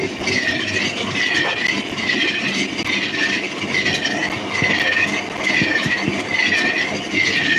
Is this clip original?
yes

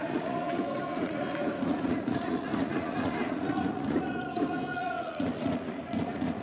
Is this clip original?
no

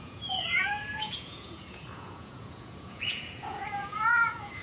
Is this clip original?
no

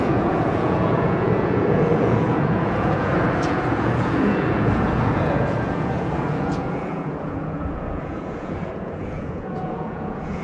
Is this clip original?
no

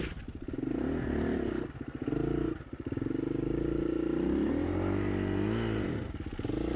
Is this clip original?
yes